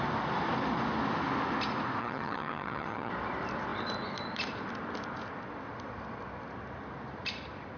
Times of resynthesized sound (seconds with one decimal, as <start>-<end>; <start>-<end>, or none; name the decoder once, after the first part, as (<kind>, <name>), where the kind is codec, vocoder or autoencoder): 2.0-3.1 (vocoder, HiFi-GAN)